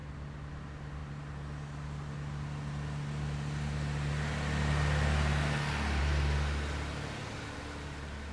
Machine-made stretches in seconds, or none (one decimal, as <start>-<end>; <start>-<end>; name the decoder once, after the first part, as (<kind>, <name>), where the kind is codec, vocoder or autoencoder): none